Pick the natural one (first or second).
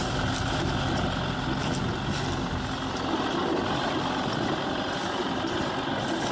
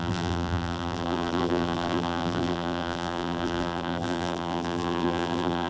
first